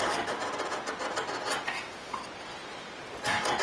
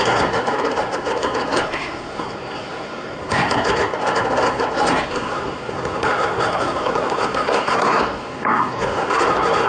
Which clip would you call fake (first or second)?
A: second